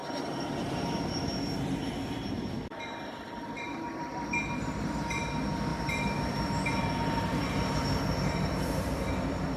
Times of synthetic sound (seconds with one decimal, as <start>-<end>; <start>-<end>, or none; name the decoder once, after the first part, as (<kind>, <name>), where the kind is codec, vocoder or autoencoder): 0.0-5.2 (vocoder, BigVGAN v2); 5.7-8.9